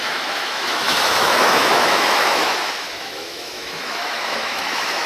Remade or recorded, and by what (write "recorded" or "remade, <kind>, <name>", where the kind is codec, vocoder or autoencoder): remade, autoencoder, DAC-VAE